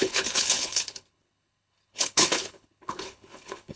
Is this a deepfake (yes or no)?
yes